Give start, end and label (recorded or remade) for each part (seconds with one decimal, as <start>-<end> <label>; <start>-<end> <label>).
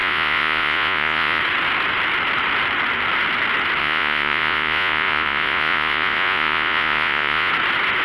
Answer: 0.0-1.4 remade; 1.4-3.8 recorded; 3.8-7.5 remade; 7.5-8.0 recorded